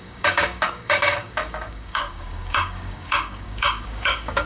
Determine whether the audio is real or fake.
fake